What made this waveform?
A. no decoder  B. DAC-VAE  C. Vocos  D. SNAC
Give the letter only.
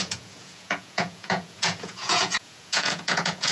C